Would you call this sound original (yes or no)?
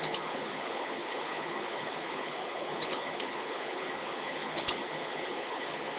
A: no